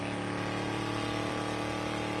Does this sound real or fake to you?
fake